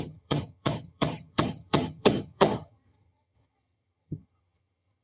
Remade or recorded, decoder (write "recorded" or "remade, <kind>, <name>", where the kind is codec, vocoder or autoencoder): remade, vocoder, HiFi-GAN